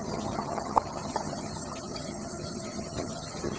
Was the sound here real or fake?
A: fake